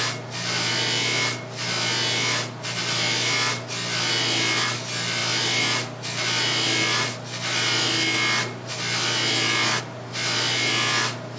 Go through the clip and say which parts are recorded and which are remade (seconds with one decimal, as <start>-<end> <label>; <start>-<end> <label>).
0.0-11.4 recorded